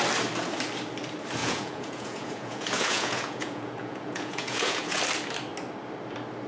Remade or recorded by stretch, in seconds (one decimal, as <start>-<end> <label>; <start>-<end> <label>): 0.0-1.4 recorded; 1.4-5.0 remade; 5.0-6.5 recorded